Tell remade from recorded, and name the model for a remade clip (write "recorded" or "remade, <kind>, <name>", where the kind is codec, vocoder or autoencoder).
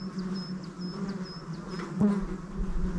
recorded